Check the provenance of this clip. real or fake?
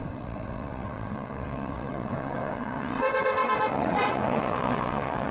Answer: fake